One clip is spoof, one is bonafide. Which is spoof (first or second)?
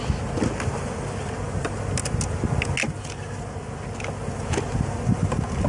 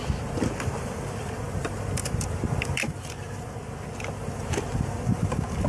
second